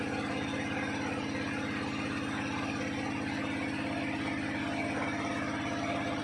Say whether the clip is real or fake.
real